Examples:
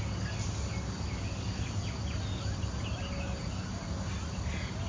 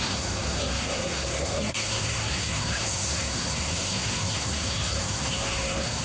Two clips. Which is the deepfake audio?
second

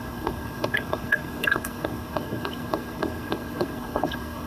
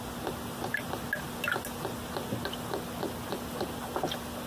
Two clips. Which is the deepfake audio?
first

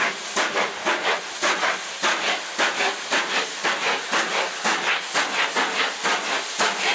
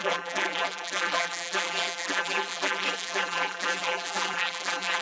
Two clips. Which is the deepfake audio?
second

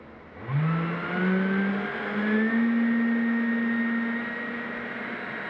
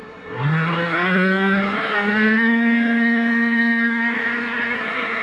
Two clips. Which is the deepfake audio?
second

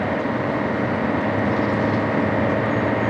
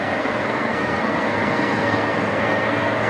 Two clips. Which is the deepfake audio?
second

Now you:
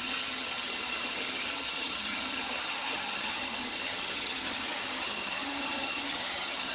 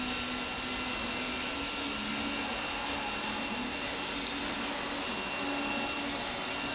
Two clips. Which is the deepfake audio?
first